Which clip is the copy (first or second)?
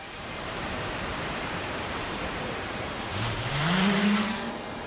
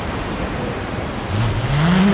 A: first